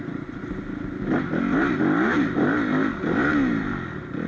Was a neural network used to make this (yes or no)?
no